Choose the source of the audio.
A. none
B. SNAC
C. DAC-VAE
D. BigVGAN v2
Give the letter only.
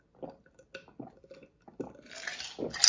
A